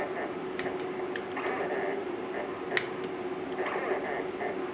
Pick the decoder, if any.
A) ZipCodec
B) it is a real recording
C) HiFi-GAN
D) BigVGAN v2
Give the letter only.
B